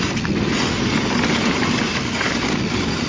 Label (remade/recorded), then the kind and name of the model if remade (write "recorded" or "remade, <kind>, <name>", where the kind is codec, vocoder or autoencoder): recorded